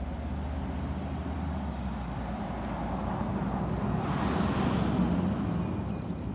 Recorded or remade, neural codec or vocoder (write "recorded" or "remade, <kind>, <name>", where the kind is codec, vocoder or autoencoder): recorded